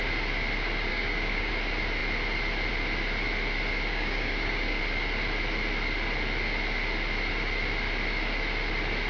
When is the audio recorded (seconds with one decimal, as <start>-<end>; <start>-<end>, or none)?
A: 0.0-0.9; 1.5-3.9; 4.8-9.1